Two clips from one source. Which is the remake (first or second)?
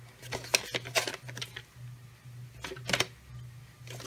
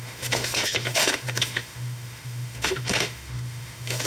second